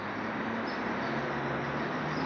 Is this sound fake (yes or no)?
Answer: no